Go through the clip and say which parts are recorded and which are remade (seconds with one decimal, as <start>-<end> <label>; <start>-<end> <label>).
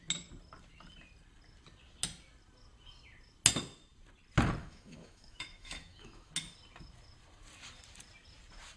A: 0.0-4.6 recorded; 4.6-6.3 remade; 6.3-8.8 recorded